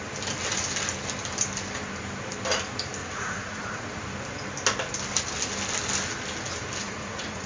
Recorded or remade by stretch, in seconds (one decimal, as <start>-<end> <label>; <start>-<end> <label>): 0.0-3.0 recorded; 3.0-4.0 remade; 4.0-6.8 recorded; 6.8-7.5 remade